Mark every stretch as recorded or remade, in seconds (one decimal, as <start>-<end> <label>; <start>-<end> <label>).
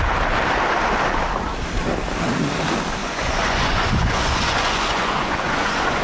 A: 0.0-3.0 recorded; 3.0-6.0 remade